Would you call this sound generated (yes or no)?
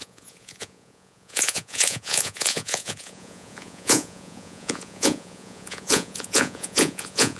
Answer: yes